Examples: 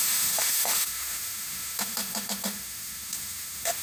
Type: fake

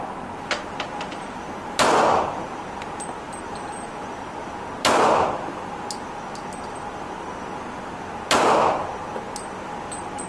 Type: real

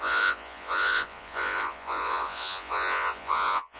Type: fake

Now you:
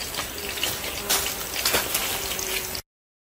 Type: real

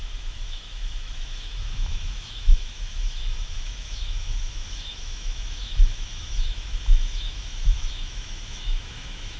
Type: fake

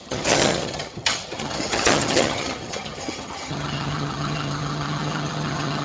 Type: fake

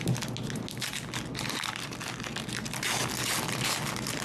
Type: real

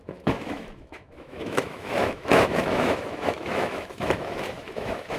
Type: fake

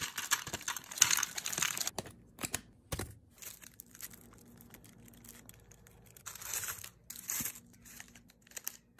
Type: real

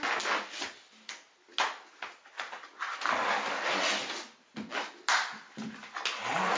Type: real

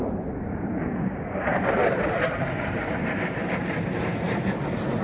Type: fake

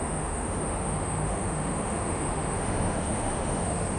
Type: fake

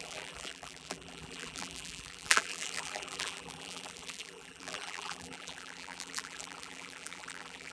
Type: fake